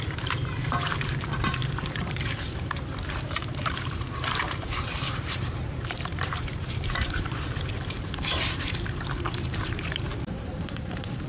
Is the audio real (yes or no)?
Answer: no